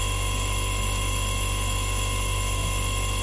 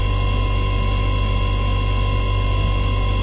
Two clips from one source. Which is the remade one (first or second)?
first